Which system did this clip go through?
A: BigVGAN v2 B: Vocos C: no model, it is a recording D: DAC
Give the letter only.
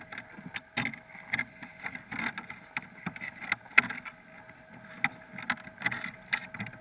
C